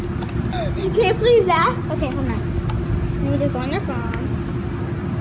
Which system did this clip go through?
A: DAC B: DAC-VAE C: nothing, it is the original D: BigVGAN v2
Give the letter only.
C